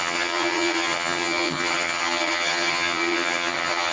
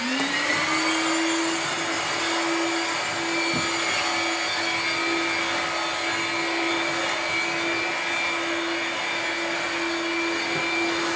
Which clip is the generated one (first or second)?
first